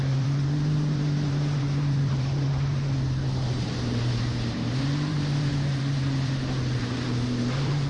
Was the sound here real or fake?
fake